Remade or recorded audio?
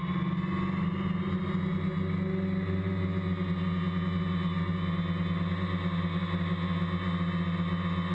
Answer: recorded